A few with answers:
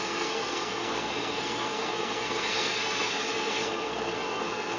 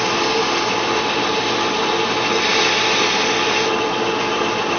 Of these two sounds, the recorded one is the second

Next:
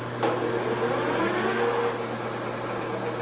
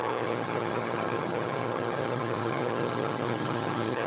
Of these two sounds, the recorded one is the first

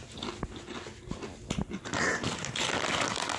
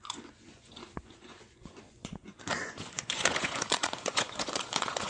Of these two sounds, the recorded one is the first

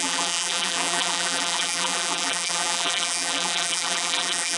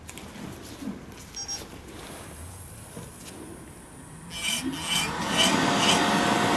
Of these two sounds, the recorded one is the second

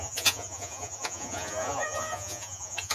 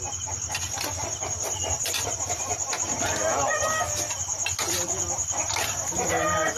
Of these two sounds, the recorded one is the second